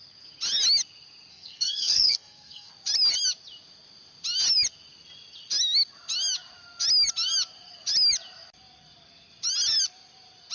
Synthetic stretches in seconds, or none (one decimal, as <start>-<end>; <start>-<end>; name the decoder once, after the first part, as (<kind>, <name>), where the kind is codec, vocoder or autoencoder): 1.3-2.7 (codec, SNAC)